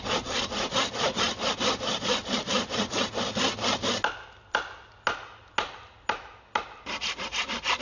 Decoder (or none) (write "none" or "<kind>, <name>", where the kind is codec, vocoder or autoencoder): none